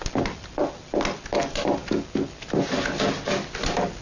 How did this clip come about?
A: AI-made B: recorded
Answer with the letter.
B